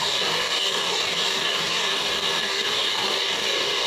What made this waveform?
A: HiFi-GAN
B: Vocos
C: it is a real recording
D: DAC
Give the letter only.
D